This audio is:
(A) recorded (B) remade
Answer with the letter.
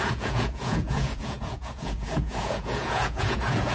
B